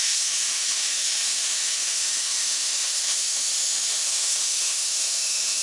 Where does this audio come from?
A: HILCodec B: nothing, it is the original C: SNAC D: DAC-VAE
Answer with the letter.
D